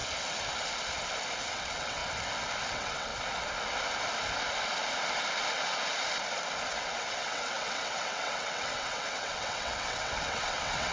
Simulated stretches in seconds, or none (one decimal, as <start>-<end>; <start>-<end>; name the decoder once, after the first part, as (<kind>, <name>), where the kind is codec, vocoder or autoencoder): 1.5-2.0 (vocoder, WaveNeXt); 2.7-3.1; 6.7-10.9